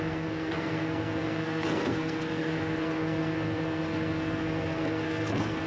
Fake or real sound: fake